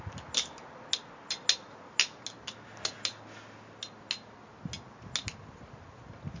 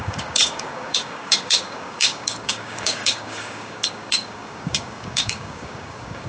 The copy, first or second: second